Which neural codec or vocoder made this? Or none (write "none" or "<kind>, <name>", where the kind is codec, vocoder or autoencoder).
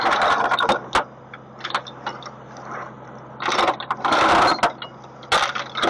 none